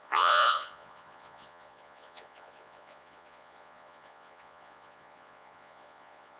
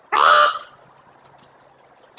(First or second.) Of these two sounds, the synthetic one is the first